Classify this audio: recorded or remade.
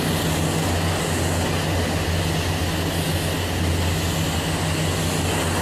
recorded